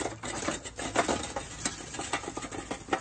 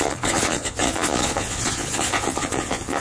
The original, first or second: first